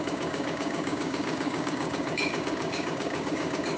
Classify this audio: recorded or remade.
remade